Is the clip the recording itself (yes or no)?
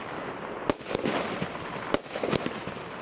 yes